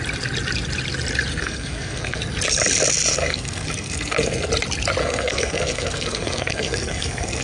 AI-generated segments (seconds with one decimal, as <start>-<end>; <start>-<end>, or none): 1.3-2.2; 3.1-4.5; 5.0-7.4